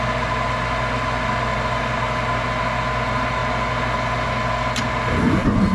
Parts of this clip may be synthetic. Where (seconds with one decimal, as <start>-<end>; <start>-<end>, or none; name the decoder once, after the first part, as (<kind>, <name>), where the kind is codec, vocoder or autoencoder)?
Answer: none